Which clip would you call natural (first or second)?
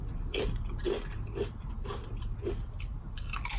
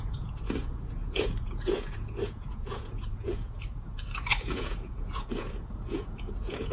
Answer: first